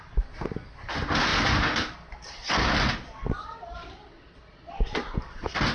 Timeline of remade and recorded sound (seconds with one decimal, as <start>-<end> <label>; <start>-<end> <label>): 0.0-5.7 recorded